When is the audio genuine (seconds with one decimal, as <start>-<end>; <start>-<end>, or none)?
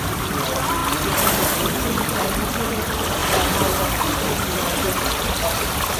0.8-1.6; 3.2-6.0